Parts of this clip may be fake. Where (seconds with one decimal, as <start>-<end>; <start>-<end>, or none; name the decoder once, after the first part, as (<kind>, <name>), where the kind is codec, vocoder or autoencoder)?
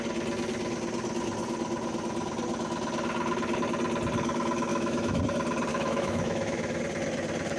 4.7-5.2 (autoencoder, DAC-VAE); 5.7-6.8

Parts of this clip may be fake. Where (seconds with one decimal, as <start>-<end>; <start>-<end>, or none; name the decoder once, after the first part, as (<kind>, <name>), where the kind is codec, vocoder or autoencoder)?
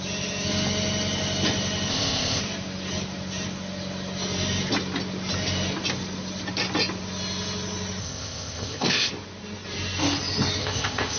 1.9-2.4 (codec, ZipCodec); 8.0-9.1; 10.6-11.2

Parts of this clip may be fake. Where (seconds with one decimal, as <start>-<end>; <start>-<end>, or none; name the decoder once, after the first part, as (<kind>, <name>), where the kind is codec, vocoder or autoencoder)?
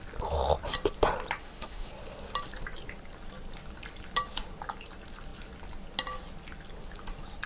1.4-1.9 (autoencoder, DAC-VAE)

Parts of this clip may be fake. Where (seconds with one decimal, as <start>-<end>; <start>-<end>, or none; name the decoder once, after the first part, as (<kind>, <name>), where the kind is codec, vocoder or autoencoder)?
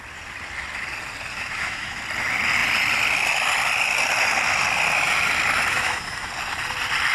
1.3-2.0 (autoencoder, DAC-VAE); 5.7-6.3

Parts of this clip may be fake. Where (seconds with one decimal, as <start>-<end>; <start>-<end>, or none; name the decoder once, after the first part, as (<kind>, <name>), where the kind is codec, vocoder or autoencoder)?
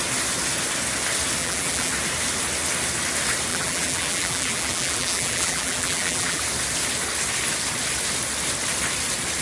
1.4-1.9 (vocoder, BigVGAN v2); 3.5-6.4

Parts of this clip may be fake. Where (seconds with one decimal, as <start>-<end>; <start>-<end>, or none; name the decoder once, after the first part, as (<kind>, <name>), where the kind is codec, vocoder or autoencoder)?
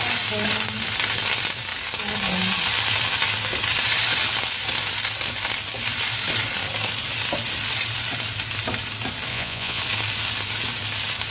9.3-9.8 (vocoder, Vocos)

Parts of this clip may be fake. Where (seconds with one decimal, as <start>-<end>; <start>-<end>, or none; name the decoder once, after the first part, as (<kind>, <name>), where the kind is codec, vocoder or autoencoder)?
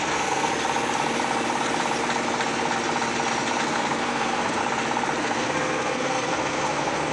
0.0-0.5 (codec, SNAC); 3.6-4.6; 5.2-7.1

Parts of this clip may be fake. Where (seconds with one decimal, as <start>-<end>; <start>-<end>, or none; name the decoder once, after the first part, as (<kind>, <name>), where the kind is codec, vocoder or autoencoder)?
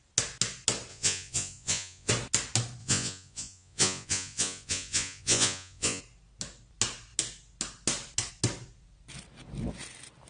0.9-2.1 (vocoder, Vocos); 2.8-6.0